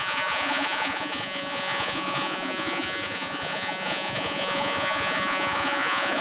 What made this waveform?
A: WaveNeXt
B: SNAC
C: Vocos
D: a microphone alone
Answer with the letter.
C